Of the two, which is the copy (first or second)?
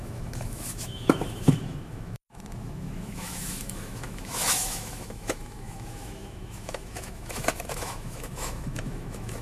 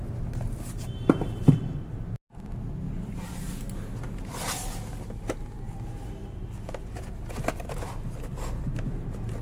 first